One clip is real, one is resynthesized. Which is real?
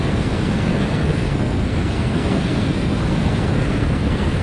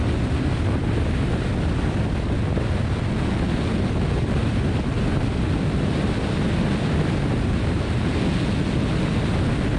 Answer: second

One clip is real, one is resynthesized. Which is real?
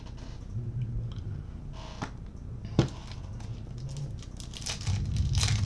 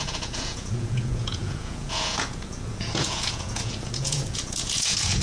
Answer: first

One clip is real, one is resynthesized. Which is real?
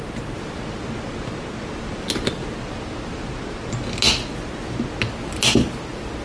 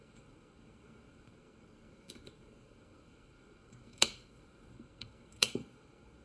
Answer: first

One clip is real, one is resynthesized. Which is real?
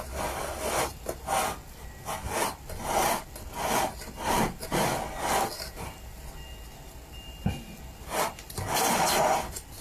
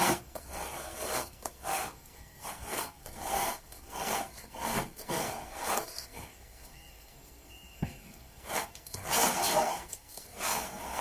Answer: first